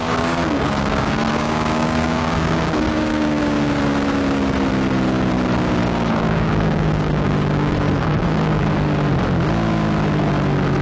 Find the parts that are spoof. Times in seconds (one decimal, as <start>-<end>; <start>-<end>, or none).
0.0-3.4; 5.8-8.6